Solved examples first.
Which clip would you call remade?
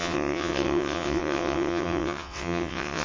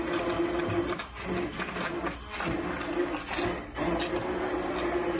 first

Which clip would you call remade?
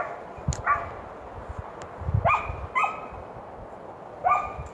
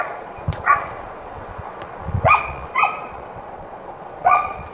second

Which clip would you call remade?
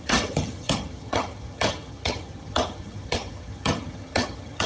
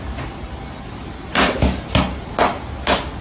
first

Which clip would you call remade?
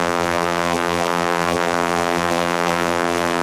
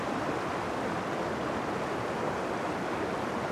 first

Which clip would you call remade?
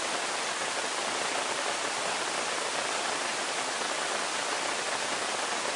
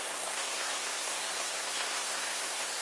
second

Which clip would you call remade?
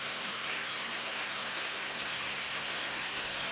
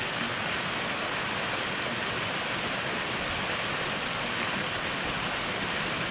first